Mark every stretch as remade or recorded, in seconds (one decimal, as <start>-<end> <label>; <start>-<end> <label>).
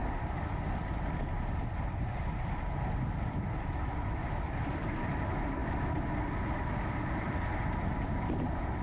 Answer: 0.0-8.8 recorded